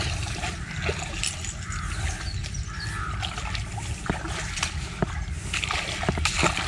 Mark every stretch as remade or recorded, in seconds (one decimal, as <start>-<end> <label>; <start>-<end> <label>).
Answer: 0.0-6.7 recorded